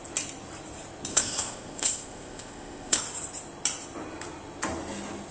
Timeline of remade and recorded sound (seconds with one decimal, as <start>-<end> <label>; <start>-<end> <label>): 0.0-1.1 recorded; 1.1-3.0 remade; 3.0-5.3 recorded